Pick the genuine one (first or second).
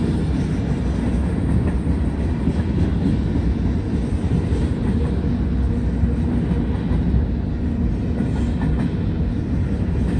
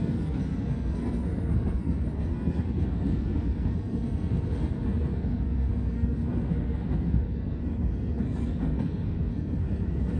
first